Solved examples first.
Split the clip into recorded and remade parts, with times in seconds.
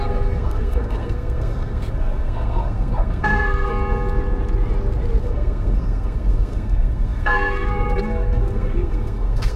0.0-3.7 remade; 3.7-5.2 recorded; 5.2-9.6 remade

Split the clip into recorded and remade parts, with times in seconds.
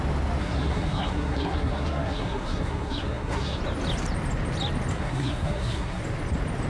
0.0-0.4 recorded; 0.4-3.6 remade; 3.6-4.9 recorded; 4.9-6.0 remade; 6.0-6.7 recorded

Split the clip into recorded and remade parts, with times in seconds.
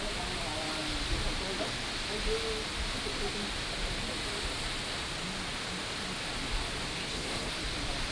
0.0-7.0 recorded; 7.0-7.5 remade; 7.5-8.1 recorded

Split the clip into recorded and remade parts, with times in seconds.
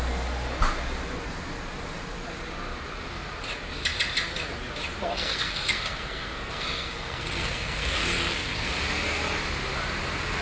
0.0-5.0 recorded; 5.0-8.7 remade; 8.7-10.4 recorded